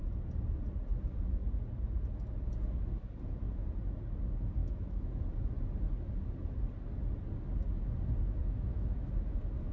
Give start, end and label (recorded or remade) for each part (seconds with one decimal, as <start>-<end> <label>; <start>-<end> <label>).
0.0-4.6 recorded; 4.6-5.1 remade; 5.1-8.4 recorded; 8.4-9.1 remade; 9.1-9.7 recorded